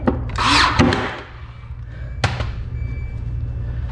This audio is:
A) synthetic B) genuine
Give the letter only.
B